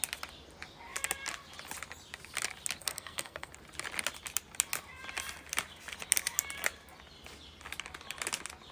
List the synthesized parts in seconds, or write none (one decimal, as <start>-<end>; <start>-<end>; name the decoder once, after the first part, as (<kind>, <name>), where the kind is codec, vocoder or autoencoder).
2.8-3.5 (codec, SNAC)